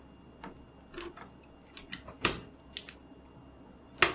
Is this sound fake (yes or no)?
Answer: no